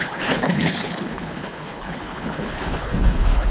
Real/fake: fake